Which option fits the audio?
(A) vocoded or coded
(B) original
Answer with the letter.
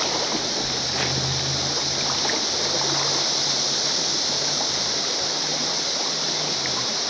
B